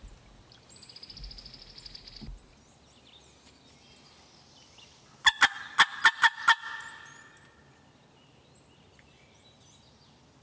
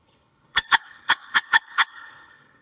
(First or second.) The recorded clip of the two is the first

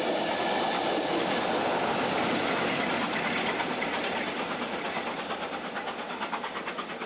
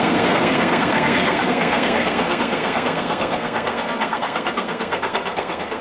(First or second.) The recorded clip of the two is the first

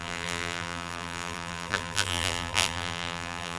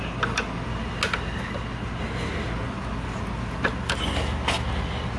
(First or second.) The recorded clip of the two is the second